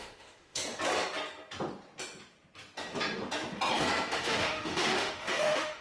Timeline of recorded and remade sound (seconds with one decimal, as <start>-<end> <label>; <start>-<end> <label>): 0.0-0.6 remade; 0.6-4.1 recorded; 4.1-5.8 remade